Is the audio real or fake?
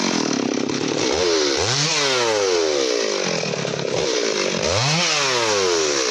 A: real